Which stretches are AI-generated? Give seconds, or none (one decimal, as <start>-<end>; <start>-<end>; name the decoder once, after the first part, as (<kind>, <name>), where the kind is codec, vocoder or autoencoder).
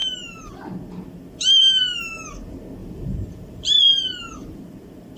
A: 2.8-4.6 (vocoder, BigVGAN v2)